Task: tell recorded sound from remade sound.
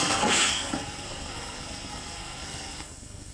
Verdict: remade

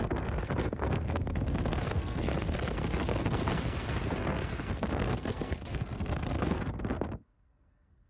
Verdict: remade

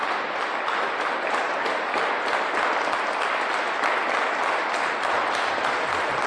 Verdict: recorded